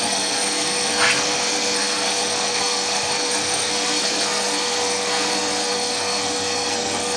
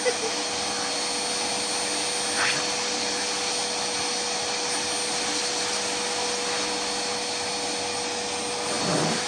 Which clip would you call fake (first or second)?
first